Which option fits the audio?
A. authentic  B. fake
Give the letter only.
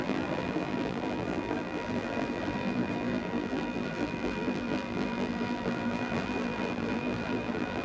B